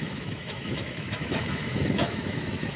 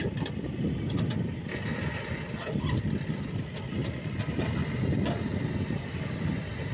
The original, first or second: second